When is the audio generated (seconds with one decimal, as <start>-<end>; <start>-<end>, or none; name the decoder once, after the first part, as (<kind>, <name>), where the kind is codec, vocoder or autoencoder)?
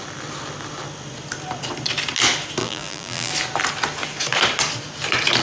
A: 2.6-3.3 (vocoder, BigVGAN v2)